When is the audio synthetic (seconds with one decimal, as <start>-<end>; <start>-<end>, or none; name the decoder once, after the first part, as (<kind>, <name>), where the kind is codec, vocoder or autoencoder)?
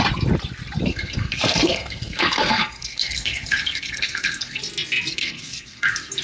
0.9-4.6 (codec, SNAC); 5.1-6.2